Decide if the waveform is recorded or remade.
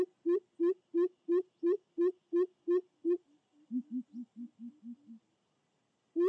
recorded